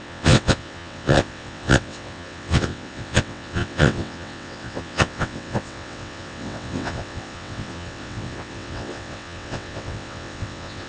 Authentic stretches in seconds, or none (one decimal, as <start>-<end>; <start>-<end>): none